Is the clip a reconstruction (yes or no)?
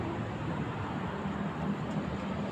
yes